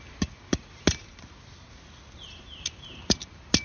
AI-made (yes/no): no